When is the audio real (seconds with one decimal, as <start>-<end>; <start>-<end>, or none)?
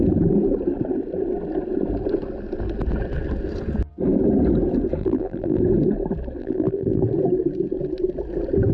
0.0-5.0; 5.6-6.4; 7.0-8.7